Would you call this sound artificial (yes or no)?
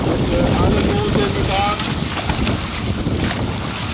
no